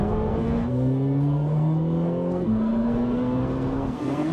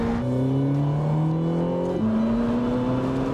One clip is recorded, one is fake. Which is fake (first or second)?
first